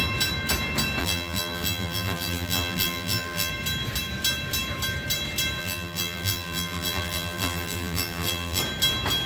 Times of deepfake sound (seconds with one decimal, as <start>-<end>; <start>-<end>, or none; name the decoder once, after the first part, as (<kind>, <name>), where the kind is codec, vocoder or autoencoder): 1.0-3.5 (vocoder, BigVGAN v2); 5.6-8.6